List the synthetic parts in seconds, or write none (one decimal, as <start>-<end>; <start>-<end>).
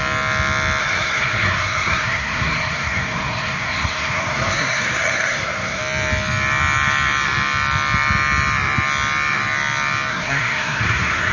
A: 0.8-5.8; 10.1-11.3